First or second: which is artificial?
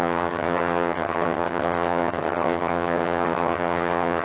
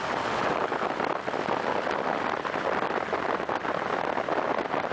first